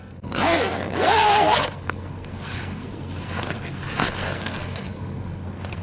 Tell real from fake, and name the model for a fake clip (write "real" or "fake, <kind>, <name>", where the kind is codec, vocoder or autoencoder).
fake, codec, SNAC